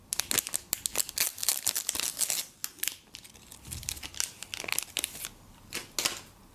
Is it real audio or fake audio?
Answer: real